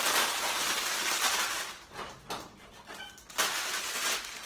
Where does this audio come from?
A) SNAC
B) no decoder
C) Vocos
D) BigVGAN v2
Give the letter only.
B